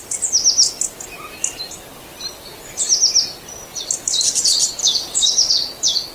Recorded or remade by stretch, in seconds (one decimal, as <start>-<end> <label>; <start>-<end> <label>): 0.0-4.8 recorded; 4.8-5.5 remade; 5.5-6.1 recorded